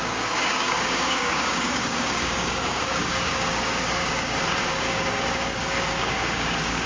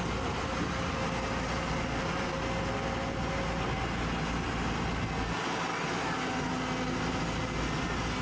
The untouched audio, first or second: second